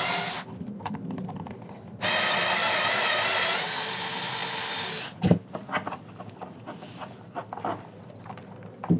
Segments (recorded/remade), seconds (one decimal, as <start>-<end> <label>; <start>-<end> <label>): 0.0-9.0 recorded